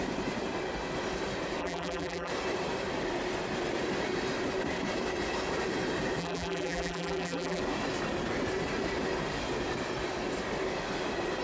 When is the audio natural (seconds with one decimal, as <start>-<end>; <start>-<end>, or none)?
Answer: 0.0-1.6; 2.3-6.2; 7.6-11.4